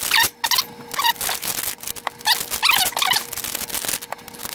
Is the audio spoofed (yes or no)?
no